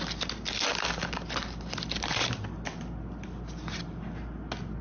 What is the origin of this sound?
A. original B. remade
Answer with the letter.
A